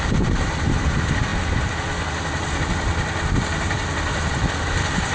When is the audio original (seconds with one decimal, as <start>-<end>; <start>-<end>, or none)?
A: 0.0-5.1

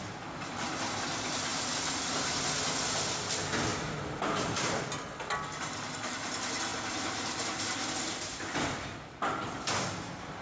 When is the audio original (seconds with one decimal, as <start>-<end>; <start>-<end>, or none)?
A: 0.0-1.5; 2.4-3.7; 4.8-10.4

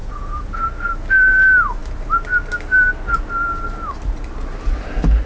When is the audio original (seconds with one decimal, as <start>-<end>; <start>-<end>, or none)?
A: 0.5-5.3

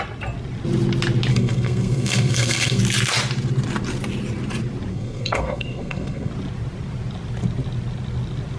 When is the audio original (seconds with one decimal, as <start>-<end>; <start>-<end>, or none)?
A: 0.0-1.3; 2.8-4.9; 6.3-8.6

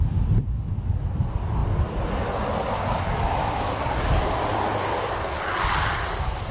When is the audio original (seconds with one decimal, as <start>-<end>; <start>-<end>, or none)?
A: 0.0-6.5

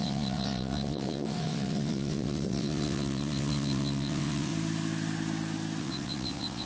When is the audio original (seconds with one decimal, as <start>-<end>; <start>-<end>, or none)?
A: 4.5-5.8

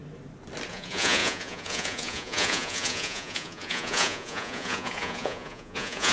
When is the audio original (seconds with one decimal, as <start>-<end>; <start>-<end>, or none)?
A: 0.0-0.7

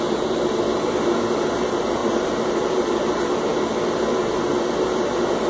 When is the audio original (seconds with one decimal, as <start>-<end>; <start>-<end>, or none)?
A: 0.0-5.5